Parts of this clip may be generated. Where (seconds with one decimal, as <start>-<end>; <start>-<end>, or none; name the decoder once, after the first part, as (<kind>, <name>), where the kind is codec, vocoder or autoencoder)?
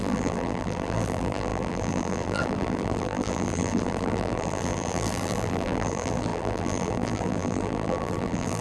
0.0-8.6 (vocoder, BigVGAN v2)